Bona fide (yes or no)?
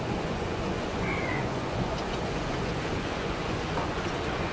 no